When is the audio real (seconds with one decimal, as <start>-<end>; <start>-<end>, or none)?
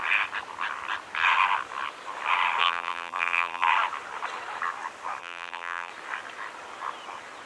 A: 0.0-2.6; 3.7-5.2; 5.9-7.5